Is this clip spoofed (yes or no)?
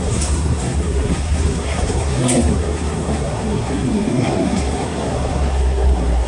yes